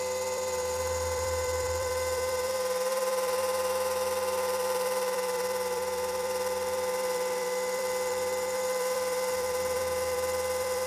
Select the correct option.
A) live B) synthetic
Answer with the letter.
B